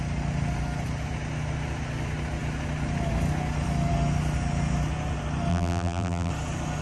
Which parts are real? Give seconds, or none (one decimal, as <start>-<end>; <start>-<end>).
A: 0.0-5.5; 6.3-6.8